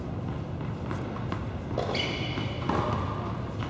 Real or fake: real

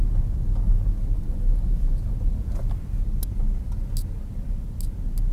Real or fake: real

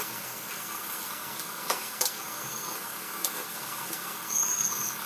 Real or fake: fake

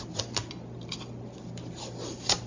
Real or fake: real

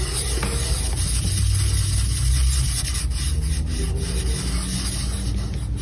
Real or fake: real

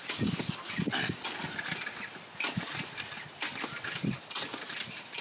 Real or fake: real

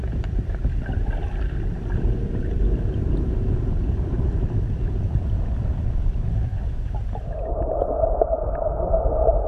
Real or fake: fake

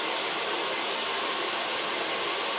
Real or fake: real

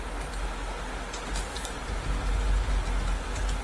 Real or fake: real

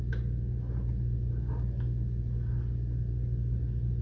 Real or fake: real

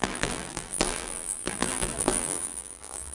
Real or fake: fake